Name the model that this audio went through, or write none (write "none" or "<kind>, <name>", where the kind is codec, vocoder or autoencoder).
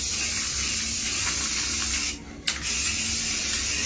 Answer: none